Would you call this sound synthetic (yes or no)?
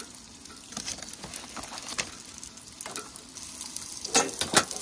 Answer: no